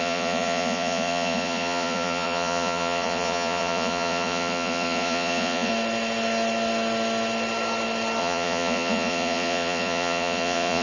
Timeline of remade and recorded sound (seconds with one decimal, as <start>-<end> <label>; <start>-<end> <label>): 0.0-5.7 remade; 5.7-8.2 recorded; 8.2-10.8 remade